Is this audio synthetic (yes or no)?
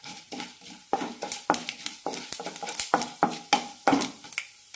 no